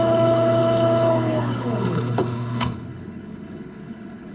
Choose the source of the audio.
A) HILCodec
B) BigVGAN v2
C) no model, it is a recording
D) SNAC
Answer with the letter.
A